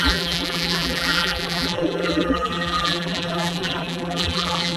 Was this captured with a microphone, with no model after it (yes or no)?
no